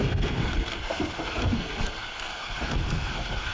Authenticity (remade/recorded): remade